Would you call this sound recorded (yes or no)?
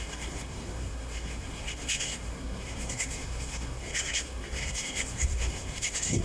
no